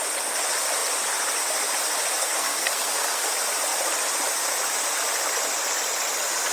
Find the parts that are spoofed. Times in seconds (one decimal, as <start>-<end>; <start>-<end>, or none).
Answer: 2.2-3.3